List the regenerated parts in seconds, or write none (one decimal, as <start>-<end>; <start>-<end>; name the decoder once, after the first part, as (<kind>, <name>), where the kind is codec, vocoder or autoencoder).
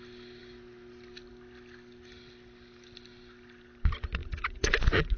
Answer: 4.2-4.8 (vocoder, Vocos)